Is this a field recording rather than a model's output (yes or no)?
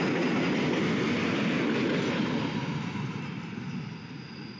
yes